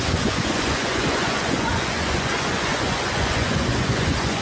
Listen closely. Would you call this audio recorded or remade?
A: remade